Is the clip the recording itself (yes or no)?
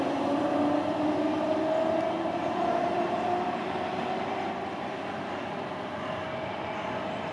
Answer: yes